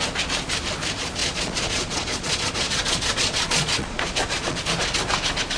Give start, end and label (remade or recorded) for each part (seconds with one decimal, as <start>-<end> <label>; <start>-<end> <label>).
0.0-1.2 recorded; 1.2-4.6 remade; 4.6-5.6 recorded